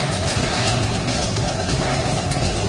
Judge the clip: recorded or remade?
remade